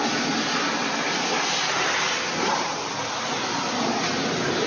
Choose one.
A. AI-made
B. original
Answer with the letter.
B